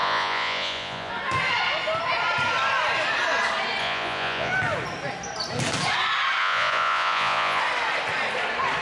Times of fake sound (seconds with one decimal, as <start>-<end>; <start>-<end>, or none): 0.0-1.1; 3.8-4.5; 6.4-7.6